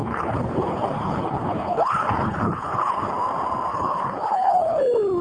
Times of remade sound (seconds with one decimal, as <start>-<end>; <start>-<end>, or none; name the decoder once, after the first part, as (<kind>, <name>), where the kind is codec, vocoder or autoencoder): 0.0-3.1 (codec, HILCodec); 3.7-4.8